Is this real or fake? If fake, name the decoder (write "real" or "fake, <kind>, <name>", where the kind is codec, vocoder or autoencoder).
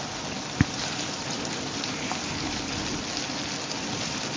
real